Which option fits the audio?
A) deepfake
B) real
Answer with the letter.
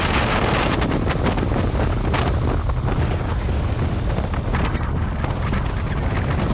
B